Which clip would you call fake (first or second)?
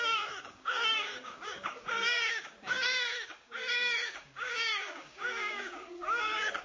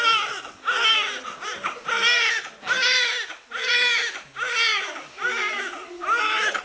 first